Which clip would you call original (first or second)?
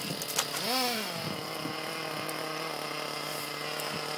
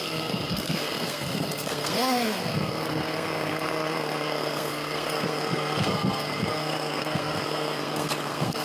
first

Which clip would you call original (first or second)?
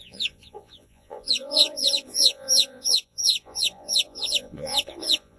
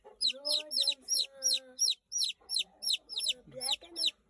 second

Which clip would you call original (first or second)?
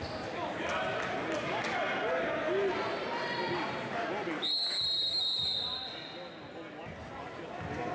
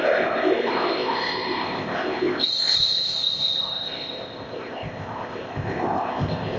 first